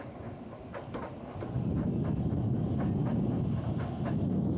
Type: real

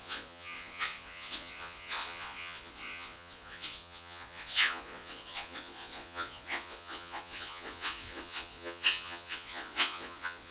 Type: fake